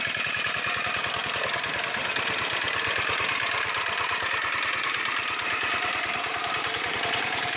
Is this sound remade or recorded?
recorded